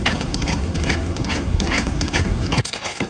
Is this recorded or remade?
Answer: remade